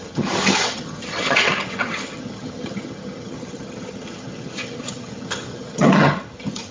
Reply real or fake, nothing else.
fake